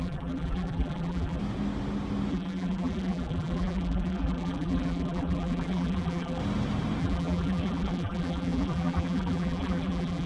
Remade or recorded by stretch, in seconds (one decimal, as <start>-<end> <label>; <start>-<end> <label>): 0.0-1.4 remade; 1.4-2.3 recorded; 2.3-6.4 remade; 6.4-7.0 recorded; 7.0-10.3 remade